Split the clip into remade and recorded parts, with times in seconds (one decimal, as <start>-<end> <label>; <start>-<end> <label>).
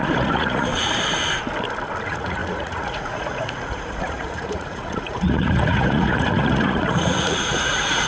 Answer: 0.0-0.7 remade; 0.7-2.0 recorded; 2.0-8.1 remade